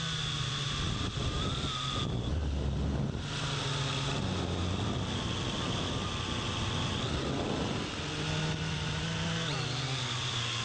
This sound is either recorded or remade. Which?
recorded